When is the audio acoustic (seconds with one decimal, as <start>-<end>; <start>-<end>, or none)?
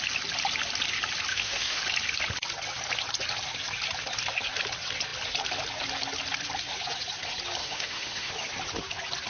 0.0-1.3; 1.8-7.6; 8.3-9.3